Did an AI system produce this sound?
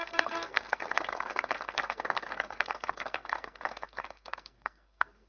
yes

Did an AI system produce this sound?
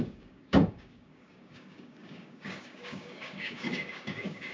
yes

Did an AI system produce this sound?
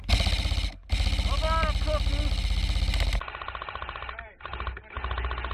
no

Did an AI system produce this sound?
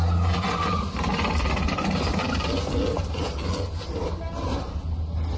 no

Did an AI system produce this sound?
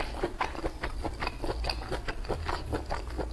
no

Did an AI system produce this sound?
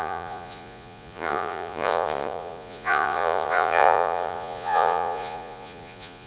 yes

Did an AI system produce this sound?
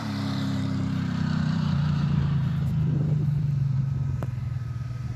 yes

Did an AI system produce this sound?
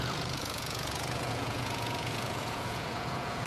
yes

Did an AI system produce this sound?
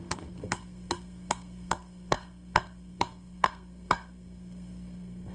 yes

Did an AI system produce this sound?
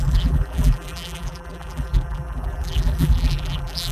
yes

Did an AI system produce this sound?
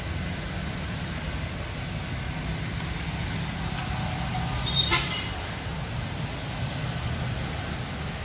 no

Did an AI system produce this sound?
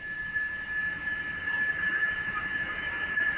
no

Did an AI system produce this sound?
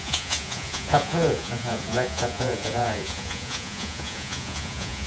yes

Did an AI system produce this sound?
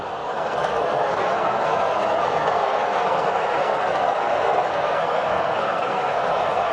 yes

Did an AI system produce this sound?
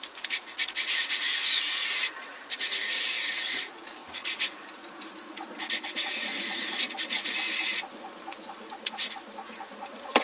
yes